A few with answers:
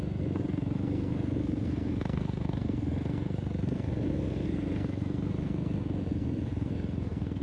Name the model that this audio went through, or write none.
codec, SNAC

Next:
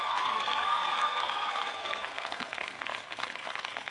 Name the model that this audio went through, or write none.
codec, SNAC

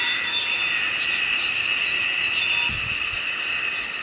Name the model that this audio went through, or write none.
none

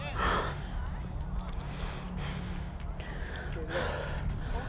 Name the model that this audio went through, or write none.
none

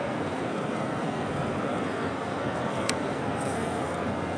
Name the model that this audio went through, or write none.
codec, SNAC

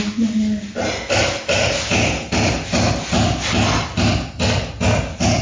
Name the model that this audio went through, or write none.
none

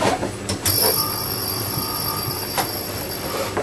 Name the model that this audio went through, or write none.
none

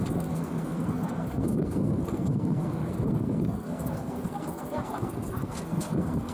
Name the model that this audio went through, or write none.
codec, SNAC